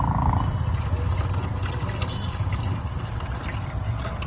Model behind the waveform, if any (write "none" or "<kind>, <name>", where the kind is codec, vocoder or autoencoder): none